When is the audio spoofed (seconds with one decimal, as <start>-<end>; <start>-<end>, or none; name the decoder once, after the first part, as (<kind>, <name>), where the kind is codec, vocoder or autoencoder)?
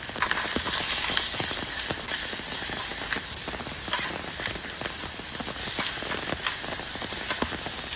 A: none